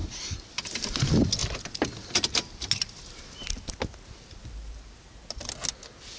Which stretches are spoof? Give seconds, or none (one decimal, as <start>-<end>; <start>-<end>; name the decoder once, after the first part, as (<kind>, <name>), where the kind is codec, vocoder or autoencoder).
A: none